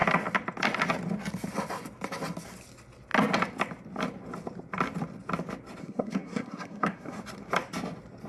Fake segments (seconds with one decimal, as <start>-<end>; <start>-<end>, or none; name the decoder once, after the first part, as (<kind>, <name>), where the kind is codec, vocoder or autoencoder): 5.8-7.2 (codec, SNAC)